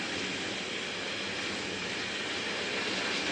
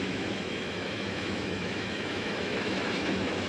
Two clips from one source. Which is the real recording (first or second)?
first